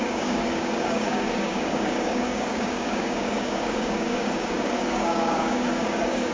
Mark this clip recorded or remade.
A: remade